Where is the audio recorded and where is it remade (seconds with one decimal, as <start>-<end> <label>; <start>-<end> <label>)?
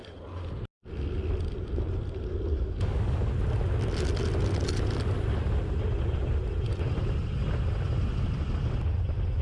0.0-2.5 recorded; 2.5-3.3 remade; 3.3-9.4 recorded